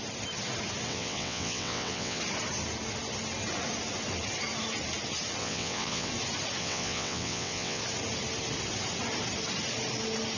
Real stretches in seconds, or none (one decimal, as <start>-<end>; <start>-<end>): 0.0-0.9; 2.2-5.4; 6.1-6.6; 7.8-10.4